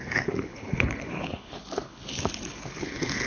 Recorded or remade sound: remade